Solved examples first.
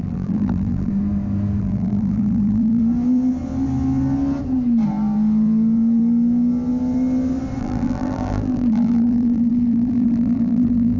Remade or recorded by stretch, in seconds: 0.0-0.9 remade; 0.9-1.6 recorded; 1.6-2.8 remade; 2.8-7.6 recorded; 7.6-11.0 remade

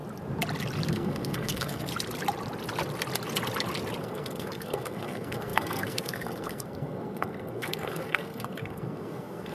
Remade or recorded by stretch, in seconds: 0.0-0.9 recorded; 0.9-1.9 remade; 1.9-4.0 recorded; 4.0-9.5 remade

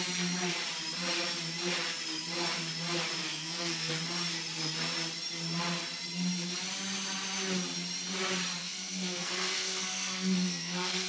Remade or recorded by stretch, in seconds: 0.0-3.2 recorded; 3.2-3.9 remade; 3.9-8.6 recorded; 8.6-11.1 remade

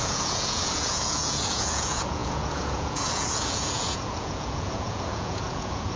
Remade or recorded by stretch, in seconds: 0.0-6.0 remade

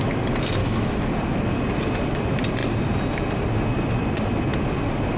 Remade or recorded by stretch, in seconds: 0.0-0.6 recorded; 0.6-1.1 remade; 1.1-5.2 recorded